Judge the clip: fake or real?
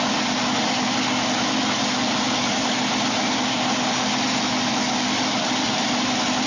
real